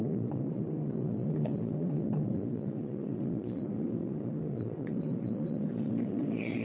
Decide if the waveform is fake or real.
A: fake